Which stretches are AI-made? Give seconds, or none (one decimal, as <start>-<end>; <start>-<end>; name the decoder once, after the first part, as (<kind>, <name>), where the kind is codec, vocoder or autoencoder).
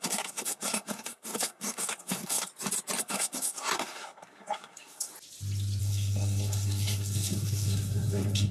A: 0.0-2.5 (codec, SNAC); 3.0-5.1; 5.8-8.5